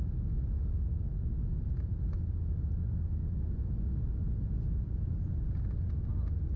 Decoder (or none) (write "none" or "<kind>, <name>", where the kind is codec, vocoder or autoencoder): none